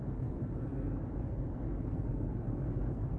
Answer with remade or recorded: remade